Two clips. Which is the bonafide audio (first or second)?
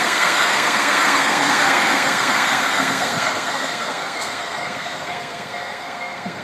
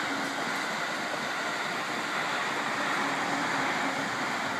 second